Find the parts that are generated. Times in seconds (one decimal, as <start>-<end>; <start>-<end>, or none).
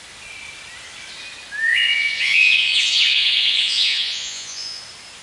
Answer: 1.7-4.8